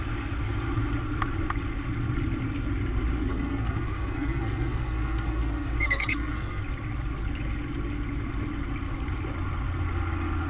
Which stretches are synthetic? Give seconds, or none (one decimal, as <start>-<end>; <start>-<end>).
3.3-6.6